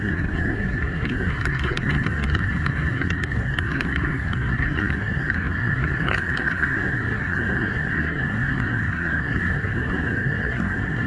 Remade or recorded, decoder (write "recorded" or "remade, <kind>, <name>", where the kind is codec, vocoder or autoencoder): remade, codec, SNAC